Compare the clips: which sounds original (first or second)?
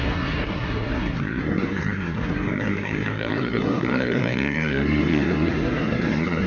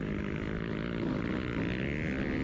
second